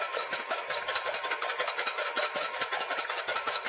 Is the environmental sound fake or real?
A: fake